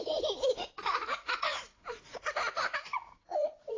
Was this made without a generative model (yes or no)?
no